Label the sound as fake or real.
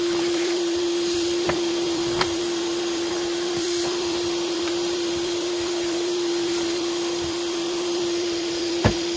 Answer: fake